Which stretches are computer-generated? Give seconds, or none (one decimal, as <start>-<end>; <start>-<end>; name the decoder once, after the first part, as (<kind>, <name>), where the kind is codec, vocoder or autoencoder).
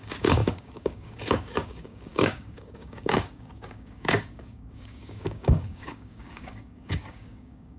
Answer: 0.0-7.8 (codec, DAC)